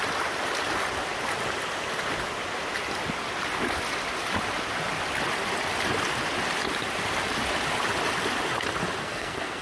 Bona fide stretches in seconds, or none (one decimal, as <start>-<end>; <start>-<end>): 0.0-9.0